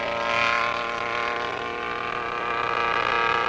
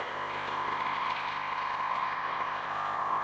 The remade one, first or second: second